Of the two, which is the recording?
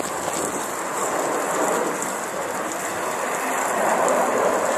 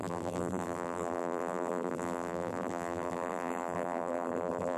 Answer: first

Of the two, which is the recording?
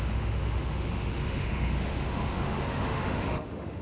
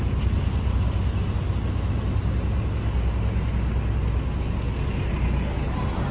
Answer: second